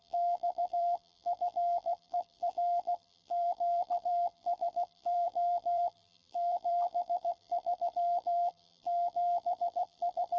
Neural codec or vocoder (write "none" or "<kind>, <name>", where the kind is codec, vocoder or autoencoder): vocoder, BigVGAN v2